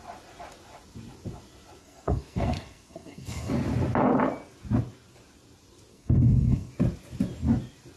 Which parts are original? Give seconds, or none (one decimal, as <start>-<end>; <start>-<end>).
0.0-1.8; 3.5-5.9; 6.7-8.0

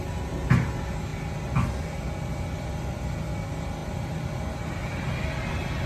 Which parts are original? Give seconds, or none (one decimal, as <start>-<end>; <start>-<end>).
0.0-5.9

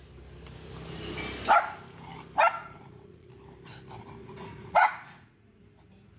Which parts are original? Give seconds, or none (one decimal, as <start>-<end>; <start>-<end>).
0.0-2.6; 3.3-4.2; 5.6-6.2